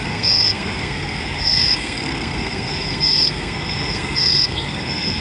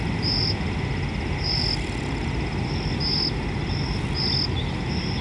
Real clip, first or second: second